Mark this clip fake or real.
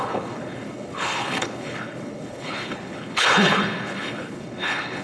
fake